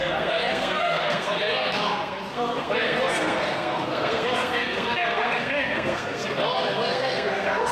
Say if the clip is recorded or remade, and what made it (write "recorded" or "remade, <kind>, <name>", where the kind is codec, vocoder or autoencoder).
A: remade, codec, SNAC